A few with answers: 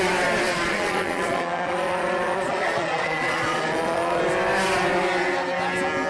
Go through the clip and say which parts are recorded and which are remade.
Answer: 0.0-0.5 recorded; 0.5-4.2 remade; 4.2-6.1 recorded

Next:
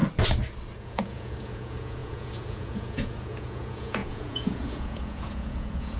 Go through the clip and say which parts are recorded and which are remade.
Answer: 0.0-0.8 recorded; 0.8-6.0 remade

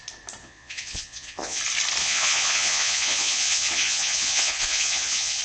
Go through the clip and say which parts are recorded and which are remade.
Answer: 0.0-0.4 recorded; 0.4-1.6 remade; 1.6-2.0 recorded; 2.0-5.4 remade

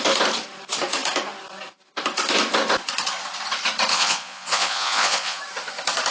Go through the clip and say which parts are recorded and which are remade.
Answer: 0.0-3.9 recorded; 3.9-5.4 remade; 5.4-6.1 recorded

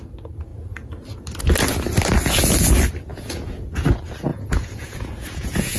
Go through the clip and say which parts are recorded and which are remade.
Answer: 0.0-3.1 recorded; 3.1-3.7 remade; 3.7-4.3 recorded; 4.3-5.8 remade

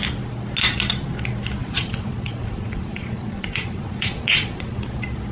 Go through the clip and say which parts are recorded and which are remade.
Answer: 0.0-1.6 recorded; 1.6-4.8 remade; 4.8-5.3 recorded

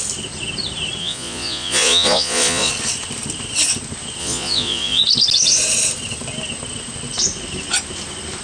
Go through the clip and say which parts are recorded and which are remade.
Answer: 0.0-1.0 recorded; 1.0-2.7 remade; 2.7-4.2 recorded; 4.2-5.0 remade; 5.0-8.4 recorded